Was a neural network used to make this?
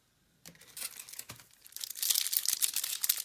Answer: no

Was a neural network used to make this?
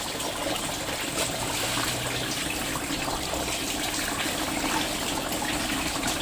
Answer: no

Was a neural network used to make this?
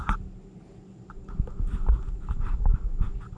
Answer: no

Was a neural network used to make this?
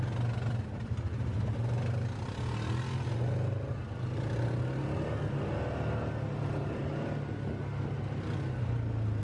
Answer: no